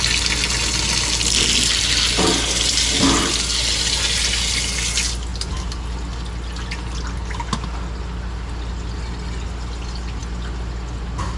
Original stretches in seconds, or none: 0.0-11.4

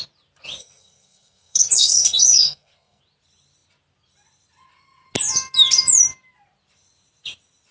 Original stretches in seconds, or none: 0.0-0.6; 3.0-7.7

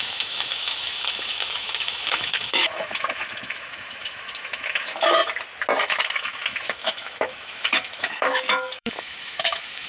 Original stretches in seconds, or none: 5.2-5.8

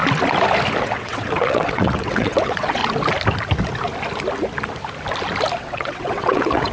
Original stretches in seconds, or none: 0.0-0.8; 2.8-5.6

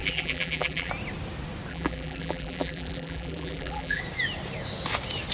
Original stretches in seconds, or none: 0.9-1.7; 4.0-5.3

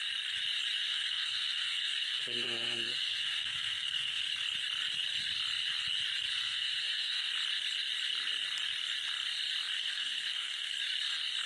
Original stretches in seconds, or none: 0.0-0.8; 4.2-6.3; 7.3-9.8; 10.7-11.5

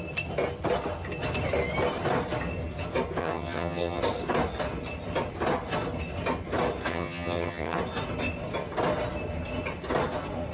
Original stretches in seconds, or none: 0.0-3.2; 4.0-6.9; 7.8-10.5